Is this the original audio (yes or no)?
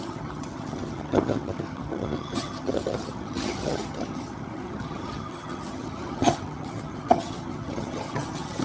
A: no